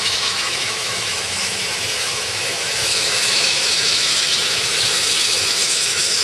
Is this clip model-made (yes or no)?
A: yes